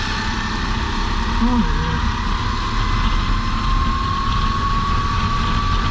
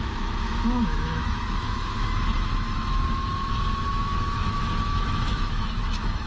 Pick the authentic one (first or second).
first